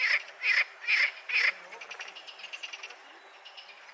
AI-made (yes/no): no